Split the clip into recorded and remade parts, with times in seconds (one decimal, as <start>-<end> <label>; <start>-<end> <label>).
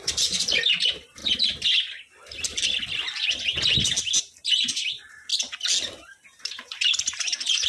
0.0-1.2 remade; 1.2-4.2 recorded; 4.2-5.3 remade; 5.3-6.2 recorded; 6.2-7.7 remade